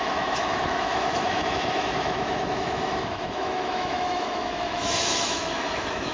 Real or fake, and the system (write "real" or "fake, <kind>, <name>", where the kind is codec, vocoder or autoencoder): fake, autoencoder, DAC-VAE